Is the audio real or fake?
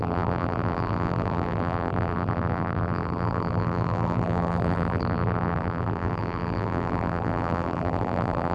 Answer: fake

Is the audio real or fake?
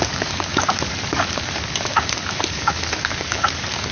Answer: fake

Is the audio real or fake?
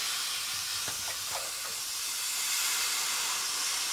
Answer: real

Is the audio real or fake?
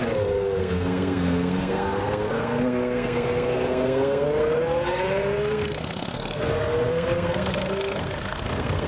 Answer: fake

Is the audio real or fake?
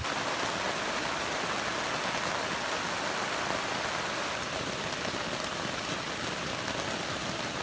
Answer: real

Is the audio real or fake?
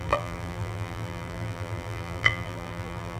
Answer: fake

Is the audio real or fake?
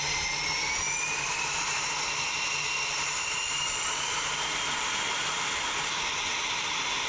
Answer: real